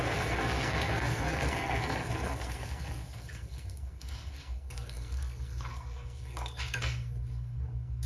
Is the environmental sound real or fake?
fake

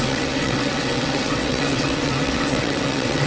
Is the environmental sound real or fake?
fake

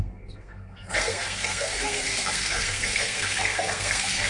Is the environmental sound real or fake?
fake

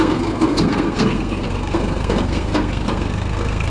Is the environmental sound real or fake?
fake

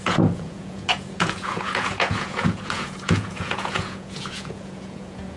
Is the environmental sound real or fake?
fake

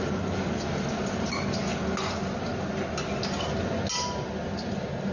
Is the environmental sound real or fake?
real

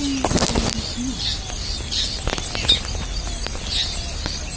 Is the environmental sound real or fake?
real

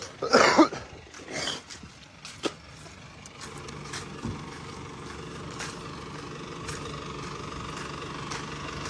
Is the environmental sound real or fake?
real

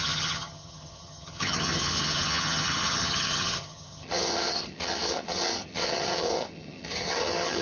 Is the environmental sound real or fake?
fake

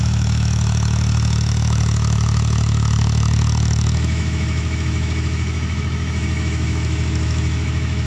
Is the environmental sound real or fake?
fake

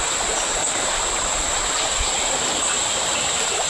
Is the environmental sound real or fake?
real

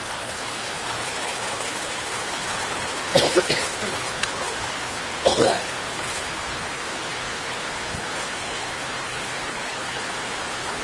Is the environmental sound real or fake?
fake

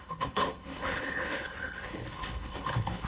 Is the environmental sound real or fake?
fake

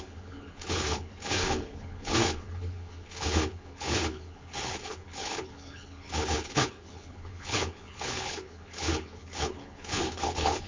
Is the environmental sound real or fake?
fake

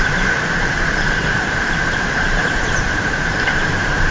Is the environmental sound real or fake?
fake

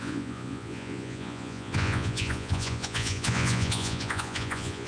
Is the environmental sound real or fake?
fake